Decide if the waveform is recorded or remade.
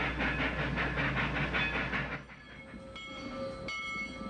recorded